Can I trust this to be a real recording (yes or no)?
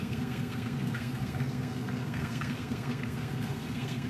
no